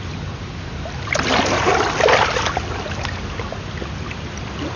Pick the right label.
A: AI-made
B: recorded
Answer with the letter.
B